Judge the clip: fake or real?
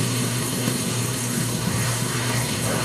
fake